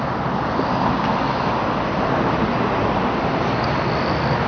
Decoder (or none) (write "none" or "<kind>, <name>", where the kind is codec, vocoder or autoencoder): none